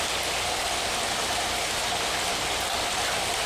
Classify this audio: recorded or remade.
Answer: recorded